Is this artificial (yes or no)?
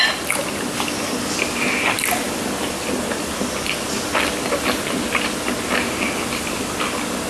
no